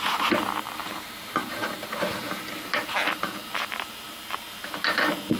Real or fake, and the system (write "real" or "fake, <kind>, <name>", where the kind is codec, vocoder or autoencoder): fake, vocoder, BigVGAN v2